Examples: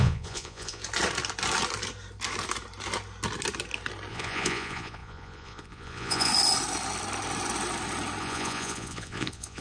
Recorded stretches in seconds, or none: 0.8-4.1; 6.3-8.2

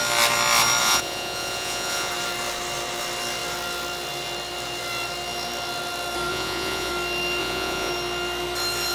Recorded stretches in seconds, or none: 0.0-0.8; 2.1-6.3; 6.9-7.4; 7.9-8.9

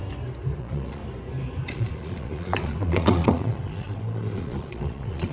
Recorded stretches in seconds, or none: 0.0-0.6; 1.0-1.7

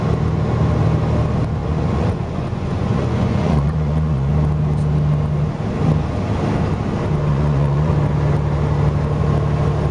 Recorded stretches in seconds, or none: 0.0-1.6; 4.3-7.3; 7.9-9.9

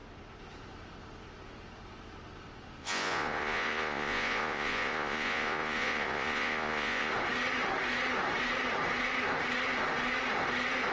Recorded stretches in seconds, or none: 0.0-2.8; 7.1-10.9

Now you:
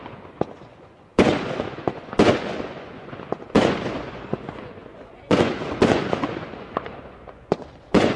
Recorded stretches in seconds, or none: none

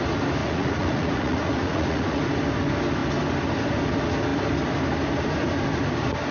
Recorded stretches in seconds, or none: 0.0-0.4; 2.2-6.3